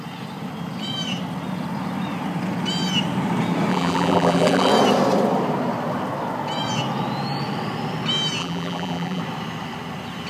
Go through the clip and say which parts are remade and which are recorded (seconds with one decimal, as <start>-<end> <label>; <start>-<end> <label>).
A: 0.0-3.7 recorded; 3.7-4.7 remade; 4.7-8.4 recorded; 8.4-9.2 remade; 9.2-10.3 recorded